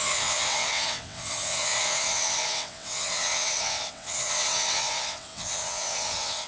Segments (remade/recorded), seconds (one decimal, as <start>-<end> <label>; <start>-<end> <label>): 0.0-6.5 remade